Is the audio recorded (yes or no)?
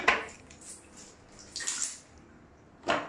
yes